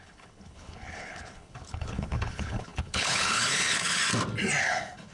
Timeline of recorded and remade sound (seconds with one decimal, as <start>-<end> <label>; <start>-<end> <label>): 0.0-4.0 remade; 4.0-4.6 recorded; 4.6-5.1 remade